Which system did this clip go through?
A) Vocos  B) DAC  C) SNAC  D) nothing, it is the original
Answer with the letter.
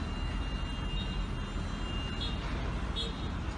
D